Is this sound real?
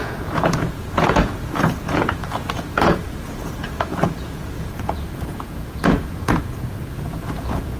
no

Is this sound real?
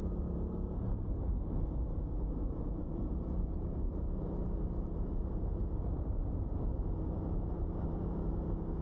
no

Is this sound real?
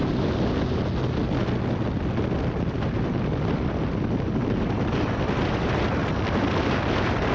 yes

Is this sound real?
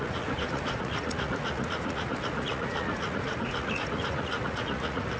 no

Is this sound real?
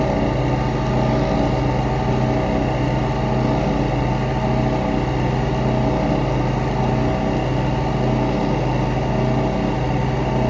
yes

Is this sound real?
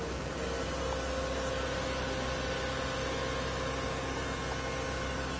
yes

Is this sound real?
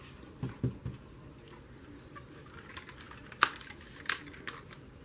yes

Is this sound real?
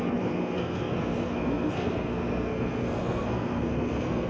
no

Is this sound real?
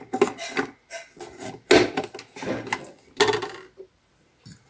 yes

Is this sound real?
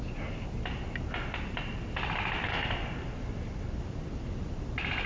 yes